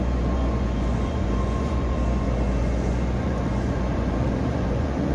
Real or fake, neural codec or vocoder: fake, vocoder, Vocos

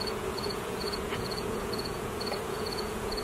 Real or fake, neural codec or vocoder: fake, vocoder, Vocos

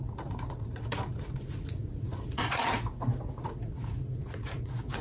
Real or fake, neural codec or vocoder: fake, vocoder, Vocos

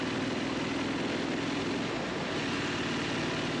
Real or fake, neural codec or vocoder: real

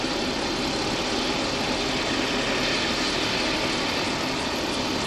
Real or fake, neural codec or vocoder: real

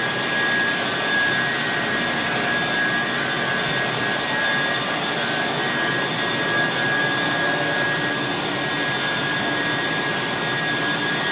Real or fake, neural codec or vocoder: real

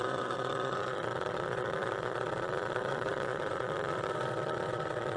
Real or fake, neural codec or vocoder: fake, vocoder, Vocos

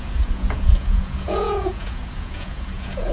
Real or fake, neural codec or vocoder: fake, vocoder, Vocos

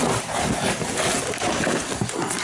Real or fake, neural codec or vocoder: real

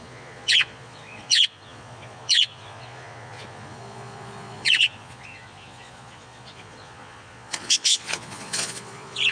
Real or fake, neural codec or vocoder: fake, vocoder, Vocos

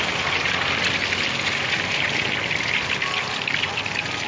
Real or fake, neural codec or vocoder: real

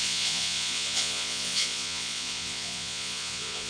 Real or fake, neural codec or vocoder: fake, vocoder, Vocos